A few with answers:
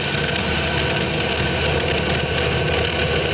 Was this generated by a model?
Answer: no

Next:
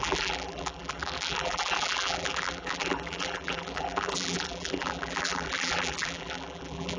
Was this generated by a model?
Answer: yes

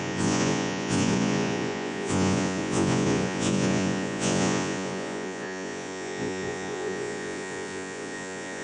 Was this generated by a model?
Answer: yes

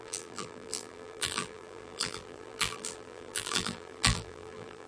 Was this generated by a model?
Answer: yes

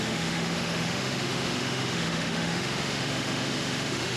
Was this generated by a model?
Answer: yes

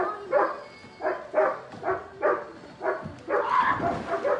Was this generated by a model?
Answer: no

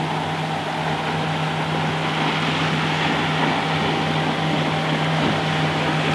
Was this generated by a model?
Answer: no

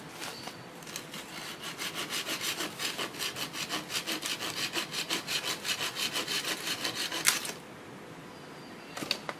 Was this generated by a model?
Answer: no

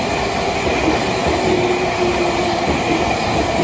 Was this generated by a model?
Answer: no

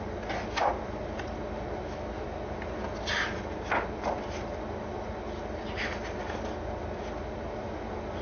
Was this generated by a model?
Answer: no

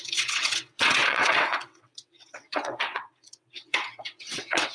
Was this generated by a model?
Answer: yes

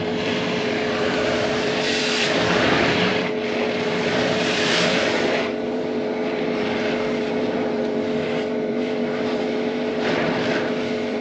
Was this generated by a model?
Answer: yes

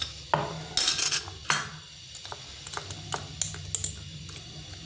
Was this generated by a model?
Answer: no